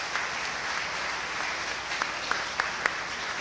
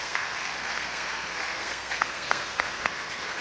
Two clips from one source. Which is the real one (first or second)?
first